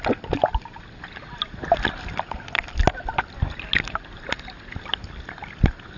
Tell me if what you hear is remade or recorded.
recorded